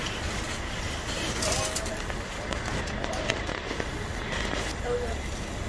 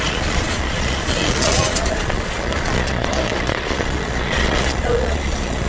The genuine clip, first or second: first